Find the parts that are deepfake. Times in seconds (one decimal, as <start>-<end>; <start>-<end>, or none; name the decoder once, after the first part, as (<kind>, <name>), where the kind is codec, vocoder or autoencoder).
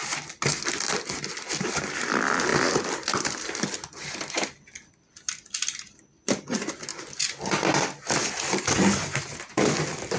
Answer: 2.5-4.1 (vocoder, BigVGAN v2); 6.9-8.3